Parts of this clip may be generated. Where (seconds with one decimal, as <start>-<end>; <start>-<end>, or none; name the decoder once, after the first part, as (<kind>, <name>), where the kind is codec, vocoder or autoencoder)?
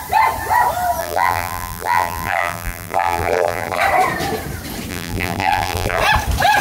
1.0-3.8 (vocoder, BigVGAN v2); 4.9-6.0